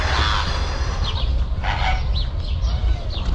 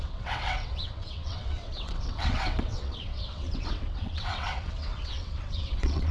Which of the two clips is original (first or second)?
first